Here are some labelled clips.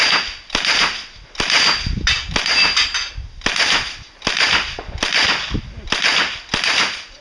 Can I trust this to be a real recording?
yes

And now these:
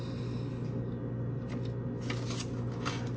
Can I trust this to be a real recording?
yes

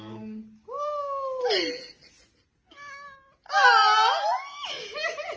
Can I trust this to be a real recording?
yes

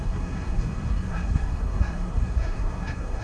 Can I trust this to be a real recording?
no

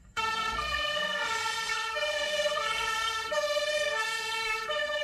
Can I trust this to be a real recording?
no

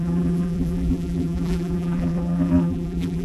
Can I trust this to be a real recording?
no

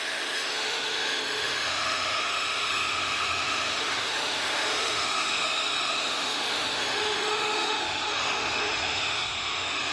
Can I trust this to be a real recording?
no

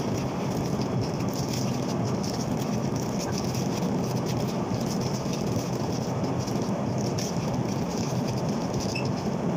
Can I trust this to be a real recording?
yes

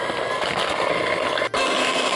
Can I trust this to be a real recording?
yes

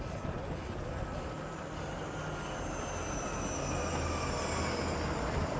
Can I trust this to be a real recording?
yes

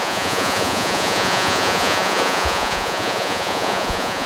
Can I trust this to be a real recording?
no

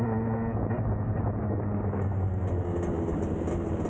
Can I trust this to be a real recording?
yes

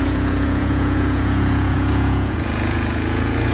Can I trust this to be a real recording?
no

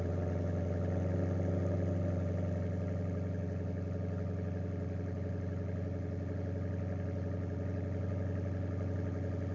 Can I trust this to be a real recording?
yes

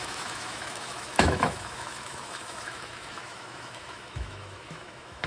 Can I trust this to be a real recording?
no